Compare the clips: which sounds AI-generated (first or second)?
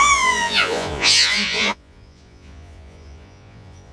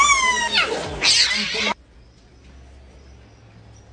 first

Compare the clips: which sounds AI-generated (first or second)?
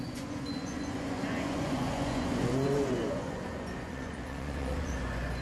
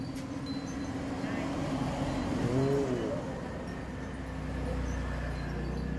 first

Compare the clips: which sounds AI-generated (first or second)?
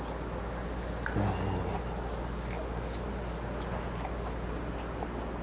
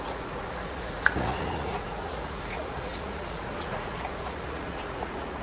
second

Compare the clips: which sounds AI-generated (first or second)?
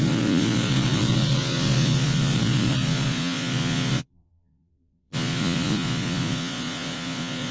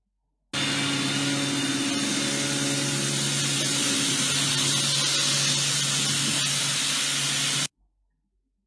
first